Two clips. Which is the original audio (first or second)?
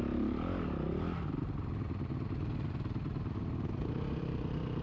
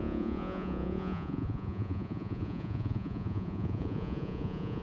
first